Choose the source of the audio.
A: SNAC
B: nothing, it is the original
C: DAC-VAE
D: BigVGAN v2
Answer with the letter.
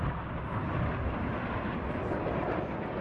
B